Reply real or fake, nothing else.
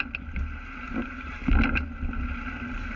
real